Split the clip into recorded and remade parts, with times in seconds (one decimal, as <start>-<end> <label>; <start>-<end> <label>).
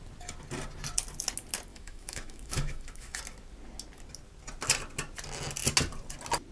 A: 0.0-1.7 recorded; 1.7-3.2 remade; 3.2-6.5 recorded